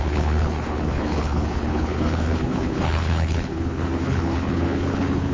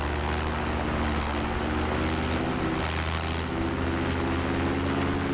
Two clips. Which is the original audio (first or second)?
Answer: second